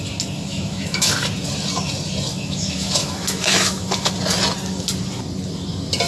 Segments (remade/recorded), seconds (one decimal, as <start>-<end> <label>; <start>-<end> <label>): 0.0-0.5 recorded; 0.5-1.1 remade; 1.1-2.3 recorded; 2.3-4.1 remade; 4.1-6.1 recorded